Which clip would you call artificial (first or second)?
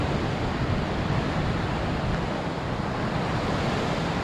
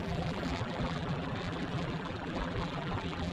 second